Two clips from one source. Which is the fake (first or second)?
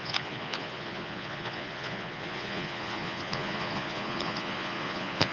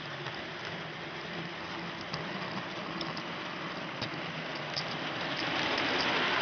first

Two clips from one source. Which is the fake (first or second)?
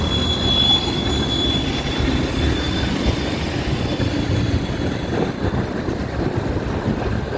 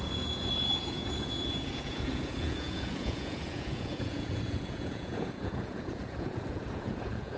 second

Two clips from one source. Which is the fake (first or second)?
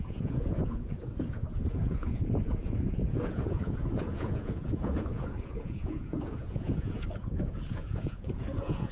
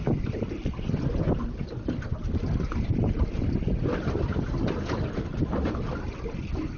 first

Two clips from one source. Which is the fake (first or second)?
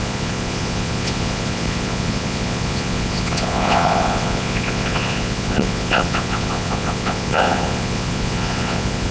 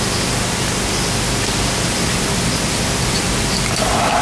first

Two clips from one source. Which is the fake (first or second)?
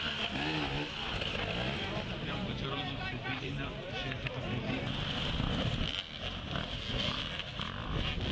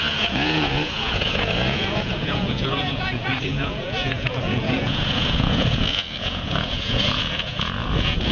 second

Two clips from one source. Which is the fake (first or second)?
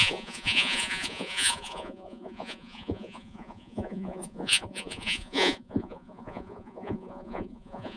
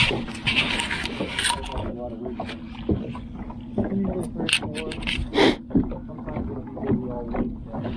first